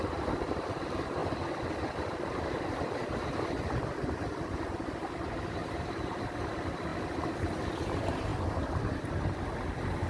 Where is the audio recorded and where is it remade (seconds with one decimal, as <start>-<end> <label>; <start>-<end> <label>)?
0.0-5.6 recorded; 5.6-6.2 remade; 6.2-10.1 recorded